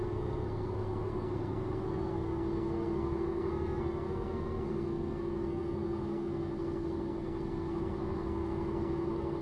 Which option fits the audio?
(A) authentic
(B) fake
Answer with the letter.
B